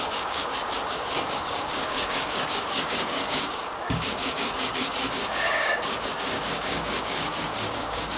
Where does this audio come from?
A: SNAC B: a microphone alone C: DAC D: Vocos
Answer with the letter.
C